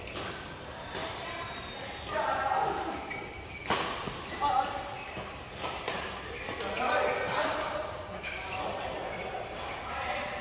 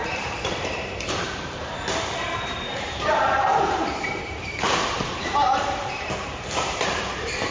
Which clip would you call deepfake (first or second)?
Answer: second